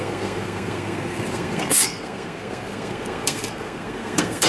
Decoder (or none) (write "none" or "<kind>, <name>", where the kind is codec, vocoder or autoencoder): codec, SNAC